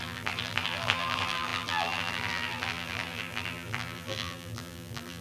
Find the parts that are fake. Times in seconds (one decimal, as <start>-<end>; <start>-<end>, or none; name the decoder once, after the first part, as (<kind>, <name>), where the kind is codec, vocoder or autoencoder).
0.0-5.2 (vocoder, BigVGAN v2)